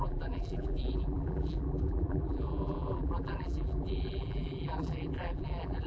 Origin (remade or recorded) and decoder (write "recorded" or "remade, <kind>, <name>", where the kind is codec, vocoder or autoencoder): remade, vocoder, BigVGAN v2